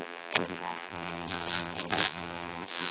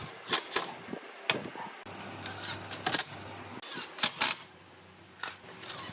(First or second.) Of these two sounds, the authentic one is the second